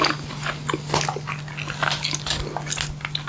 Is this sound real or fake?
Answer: real